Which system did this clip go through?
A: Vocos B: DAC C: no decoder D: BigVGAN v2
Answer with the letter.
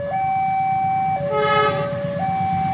C